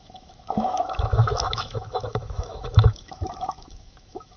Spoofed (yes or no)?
yes